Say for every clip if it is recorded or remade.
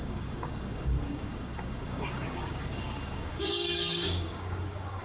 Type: remade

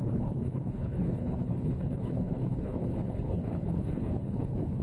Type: remade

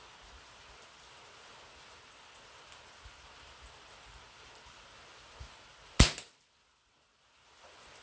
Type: recorded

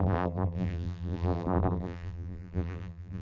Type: remade